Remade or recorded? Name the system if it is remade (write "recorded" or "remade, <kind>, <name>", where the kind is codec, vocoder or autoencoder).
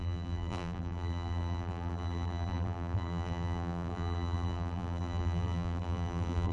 remade, vocoder, BigVGAN v2